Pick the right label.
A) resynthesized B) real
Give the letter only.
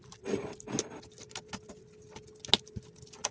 B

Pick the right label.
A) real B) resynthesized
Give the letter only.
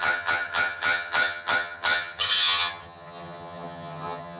B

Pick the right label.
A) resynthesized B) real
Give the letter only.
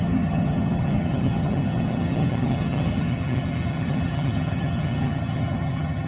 A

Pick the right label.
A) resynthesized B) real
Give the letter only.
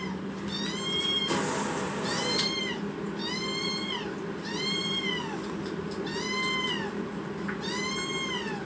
B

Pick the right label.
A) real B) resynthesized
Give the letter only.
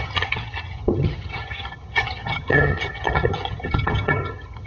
B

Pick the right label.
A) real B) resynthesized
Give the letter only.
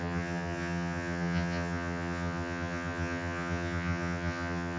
B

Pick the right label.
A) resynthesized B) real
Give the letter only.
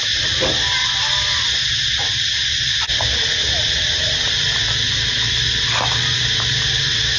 B